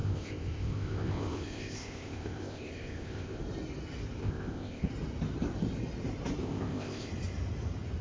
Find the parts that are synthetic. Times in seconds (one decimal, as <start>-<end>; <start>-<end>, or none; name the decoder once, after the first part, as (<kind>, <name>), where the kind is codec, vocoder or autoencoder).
0.0-3.4 (codec, ZipCodec); 4.2-4.9; 6.4-7.1